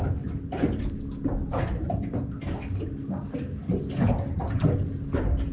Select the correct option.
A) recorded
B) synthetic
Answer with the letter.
A